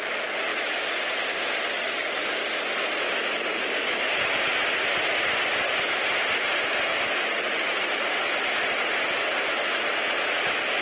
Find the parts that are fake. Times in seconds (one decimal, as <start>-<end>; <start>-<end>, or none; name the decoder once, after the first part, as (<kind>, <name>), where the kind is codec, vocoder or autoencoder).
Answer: none